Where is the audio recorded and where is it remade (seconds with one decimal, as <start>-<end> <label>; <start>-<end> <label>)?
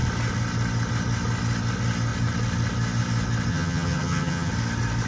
0.0-3.5 recorded; 3.5-4.5 remade; 4.5-5.1 recorded